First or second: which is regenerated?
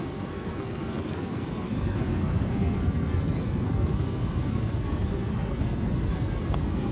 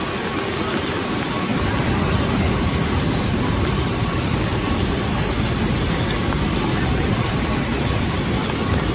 first